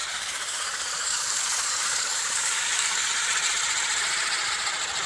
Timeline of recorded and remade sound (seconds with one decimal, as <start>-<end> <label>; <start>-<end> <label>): 0.0-3.1 remade; 3.1-5.1 recorded